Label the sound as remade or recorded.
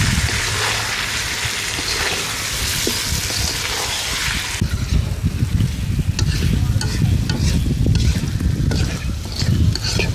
recorded